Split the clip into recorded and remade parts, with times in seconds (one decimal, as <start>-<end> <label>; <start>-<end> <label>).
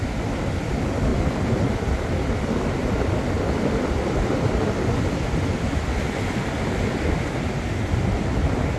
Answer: 0.0-8.8 recorded